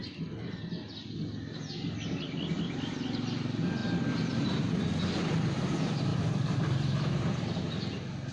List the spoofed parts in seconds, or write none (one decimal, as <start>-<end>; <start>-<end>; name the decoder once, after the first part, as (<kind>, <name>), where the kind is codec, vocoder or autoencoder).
3.8-4.6 (vocoder, BigVGAN v2); 6.1-7.4